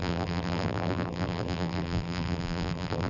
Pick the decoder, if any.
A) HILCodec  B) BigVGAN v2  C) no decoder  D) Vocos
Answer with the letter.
B